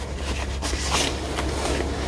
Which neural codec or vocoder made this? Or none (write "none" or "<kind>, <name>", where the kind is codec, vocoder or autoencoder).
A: none